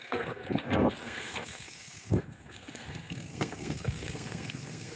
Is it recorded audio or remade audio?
remade